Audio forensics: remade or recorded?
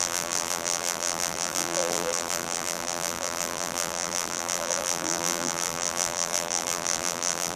remade